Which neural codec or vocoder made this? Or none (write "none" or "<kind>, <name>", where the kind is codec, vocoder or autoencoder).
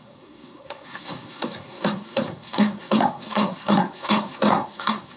codec, SNAC